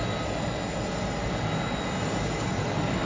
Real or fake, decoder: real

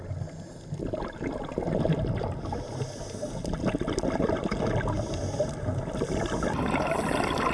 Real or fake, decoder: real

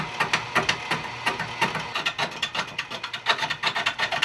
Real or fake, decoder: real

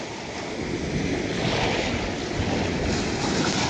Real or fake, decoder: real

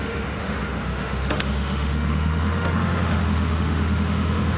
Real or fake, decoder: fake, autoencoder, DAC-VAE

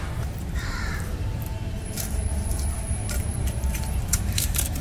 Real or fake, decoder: fake, vocoder, BigVGAN v2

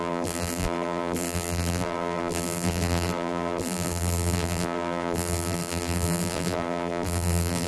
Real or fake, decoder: fake, vocoder, BigVGAN v2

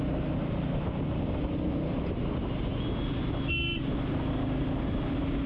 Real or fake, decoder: real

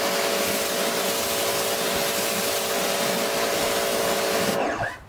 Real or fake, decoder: real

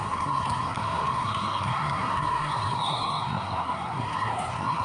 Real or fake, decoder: fake, codec, SNAC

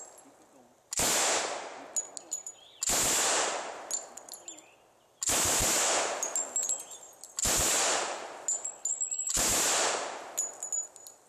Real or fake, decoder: real